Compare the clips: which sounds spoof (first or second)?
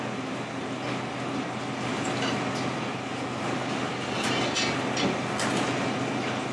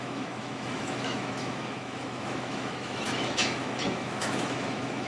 second